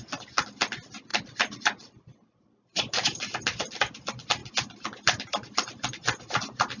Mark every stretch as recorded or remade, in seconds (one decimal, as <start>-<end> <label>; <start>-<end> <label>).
0.0-1.1 recorded; 1.1-3.8 remade; 3.8-6.8 recorded